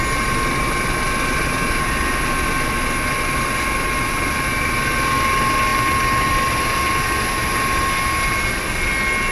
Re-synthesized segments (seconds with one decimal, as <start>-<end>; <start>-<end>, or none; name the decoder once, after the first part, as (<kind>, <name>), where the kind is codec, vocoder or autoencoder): none